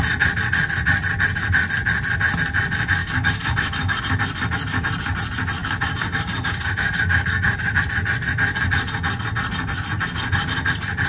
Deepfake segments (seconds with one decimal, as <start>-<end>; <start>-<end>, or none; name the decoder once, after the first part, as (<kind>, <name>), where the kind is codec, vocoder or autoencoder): 3.0-4.0 (codec, DAC); 5.6-7.8